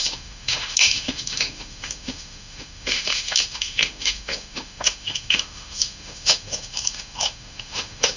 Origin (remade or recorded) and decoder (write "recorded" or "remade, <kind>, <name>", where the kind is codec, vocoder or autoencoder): remade, autoencoder, DAC-VAE